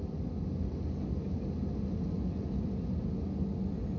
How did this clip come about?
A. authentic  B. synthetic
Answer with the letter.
A